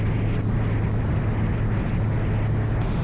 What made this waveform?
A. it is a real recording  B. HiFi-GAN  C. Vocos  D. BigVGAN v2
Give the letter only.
A